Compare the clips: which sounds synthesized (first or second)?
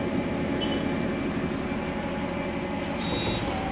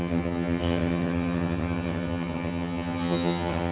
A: second